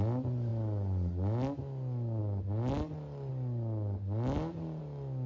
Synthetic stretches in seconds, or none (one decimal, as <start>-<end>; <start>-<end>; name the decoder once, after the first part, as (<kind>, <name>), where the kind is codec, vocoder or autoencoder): none